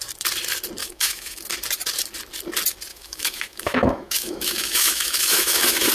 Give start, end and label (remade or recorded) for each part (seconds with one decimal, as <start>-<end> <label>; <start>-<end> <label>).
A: 0.0-0.8 recorded; 0.8-1.4 remade; 1.4-2.9 recorded; 2.9-5.9 remade